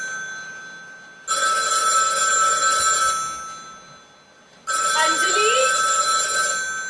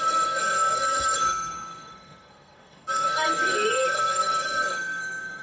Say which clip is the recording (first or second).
first